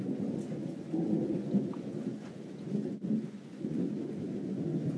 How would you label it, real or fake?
fake